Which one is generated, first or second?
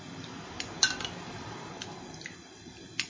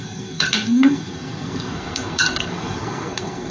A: second